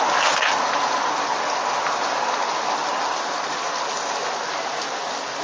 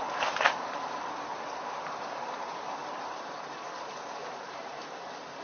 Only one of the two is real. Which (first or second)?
first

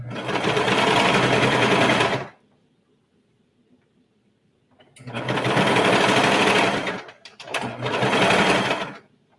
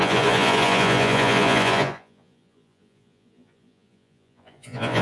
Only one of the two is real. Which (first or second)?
first